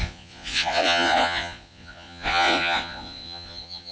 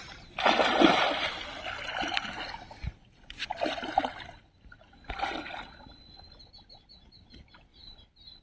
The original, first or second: second